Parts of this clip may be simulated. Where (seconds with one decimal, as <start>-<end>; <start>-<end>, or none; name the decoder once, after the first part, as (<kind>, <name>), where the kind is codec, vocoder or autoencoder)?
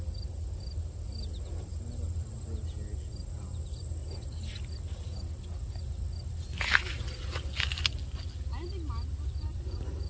none